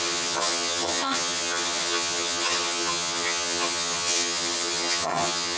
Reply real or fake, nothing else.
fake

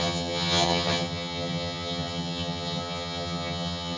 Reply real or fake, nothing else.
fake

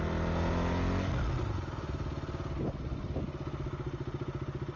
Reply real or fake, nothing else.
real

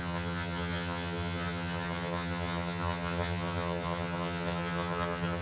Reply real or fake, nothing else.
fake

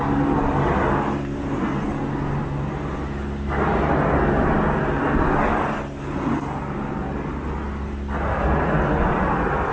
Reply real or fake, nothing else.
real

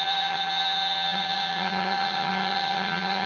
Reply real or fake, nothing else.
fake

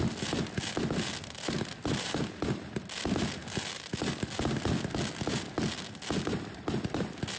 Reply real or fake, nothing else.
real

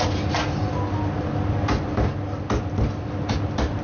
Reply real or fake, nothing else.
real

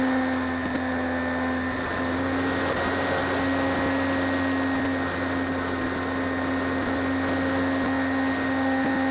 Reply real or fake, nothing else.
real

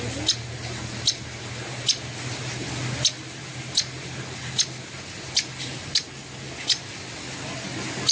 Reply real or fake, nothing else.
real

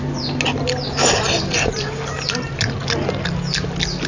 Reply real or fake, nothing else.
real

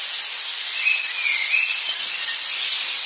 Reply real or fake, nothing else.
real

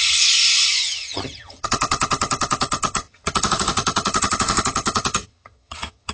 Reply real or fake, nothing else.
fake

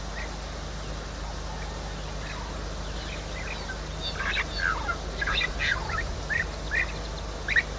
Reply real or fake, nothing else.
real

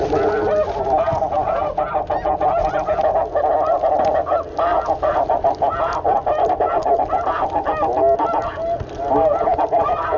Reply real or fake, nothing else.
real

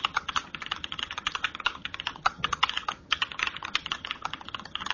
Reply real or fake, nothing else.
fake